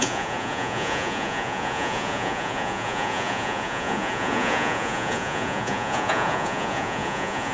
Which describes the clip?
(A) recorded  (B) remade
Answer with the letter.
B